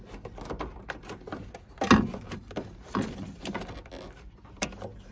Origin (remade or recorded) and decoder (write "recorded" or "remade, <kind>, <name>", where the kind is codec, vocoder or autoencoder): recorded